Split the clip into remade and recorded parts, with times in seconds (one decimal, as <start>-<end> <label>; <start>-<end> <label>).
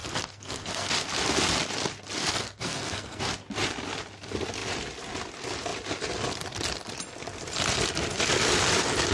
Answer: 0.0-0.9 remade; 0.9-2.3 recorded; 2.3-3.2 remade; 3.2-9.1 recorded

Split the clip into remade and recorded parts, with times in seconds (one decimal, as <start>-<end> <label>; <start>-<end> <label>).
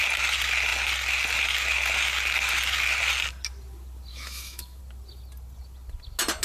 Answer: 0.0-4.1 recorded; 4.1-4.8 remade; 4.8-6.4 recorded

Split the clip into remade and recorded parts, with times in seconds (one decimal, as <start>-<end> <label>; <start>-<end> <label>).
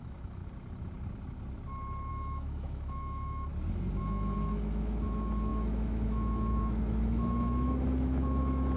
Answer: 0.0-0.4 remade; 0.4-2.1 recorded; 2.1-3.5 remade; 3.5-4.0 recorded; 4.0-8.8 remade